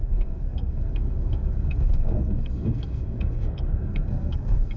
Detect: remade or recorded remade